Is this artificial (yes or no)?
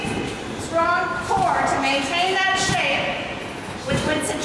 no